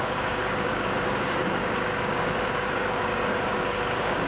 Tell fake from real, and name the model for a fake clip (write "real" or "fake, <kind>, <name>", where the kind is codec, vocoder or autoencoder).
fake, codec, DAC